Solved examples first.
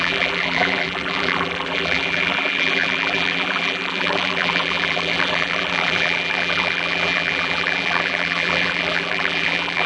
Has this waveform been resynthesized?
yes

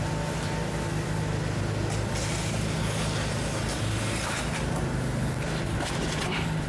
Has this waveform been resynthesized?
no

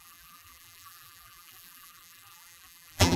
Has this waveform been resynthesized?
yes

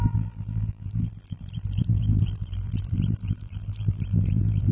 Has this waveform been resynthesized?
yes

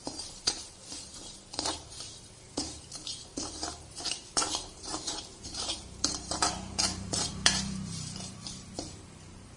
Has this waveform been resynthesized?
yes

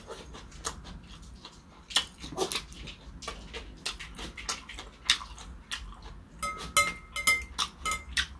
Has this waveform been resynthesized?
no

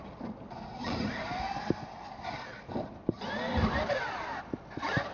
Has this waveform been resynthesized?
no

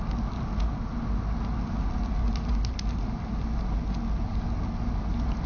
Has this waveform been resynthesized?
no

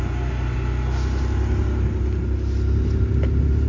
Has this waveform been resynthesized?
no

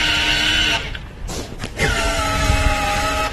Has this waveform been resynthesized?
no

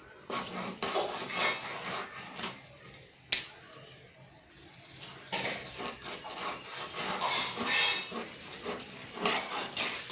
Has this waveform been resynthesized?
no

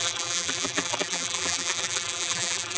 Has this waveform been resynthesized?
yes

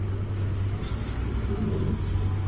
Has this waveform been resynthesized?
no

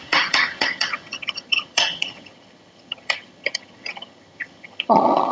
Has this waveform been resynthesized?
yes